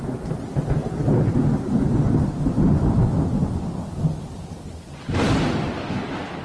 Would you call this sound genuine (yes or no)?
yes